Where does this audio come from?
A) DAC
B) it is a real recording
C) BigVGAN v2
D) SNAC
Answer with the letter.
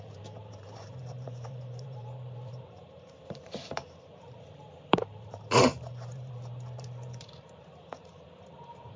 C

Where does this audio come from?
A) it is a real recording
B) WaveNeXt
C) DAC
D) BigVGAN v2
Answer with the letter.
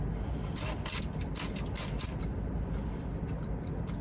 A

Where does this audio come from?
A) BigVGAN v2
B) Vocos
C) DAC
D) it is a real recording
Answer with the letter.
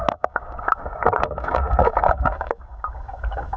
C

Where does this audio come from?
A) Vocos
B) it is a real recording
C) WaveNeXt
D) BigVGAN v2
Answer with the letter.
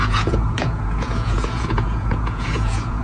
A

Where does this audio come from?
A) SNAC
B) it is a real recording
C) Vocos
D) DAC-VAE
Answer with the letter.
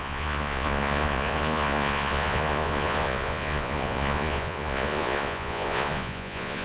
C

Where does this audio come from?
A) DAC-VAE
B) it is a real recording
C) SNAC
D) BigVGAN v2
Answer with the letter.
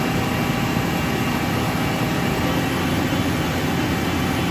B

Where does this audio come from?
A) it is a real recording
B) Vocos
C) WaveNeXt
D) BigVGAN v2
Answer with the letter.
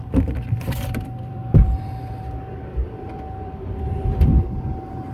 D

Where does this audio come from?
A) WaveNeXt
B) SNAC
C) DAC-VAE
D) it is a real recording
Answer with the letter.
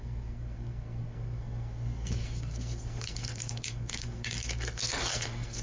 B